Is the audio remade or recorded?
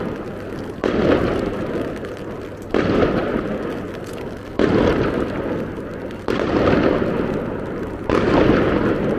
recorded